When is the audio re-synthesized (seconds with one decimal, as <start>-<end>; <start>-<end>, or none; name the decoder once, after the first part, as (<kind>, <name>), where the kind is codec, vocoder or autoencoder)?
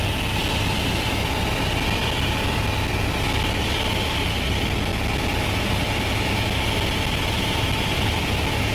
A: none